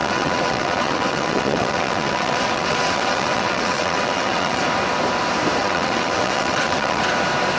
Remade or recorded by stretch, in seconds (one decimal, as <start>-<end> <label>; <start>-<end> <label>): 0.0-4.6 remade; 4.6-5.6 recorded; 5.6-7.0 remade; 7.0-7.6 recorded